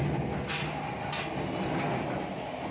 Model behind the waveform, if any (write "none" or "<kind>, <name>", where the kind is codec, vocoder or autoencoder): none